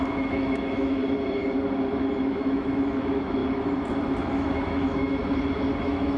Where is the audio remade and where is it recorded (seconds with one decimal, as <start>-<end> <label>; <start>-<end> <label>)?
0.0-1.0 remade; 1.0-2.3 recorded; 2.3-3.4 remade; 3.4-4.2 recorded; 4.2-5.2 remade; 5.2-5.8 recorded; 5.8-6.2 remade